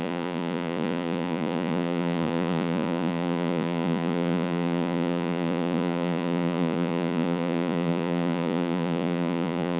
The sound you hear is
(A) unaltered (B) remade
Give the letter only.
B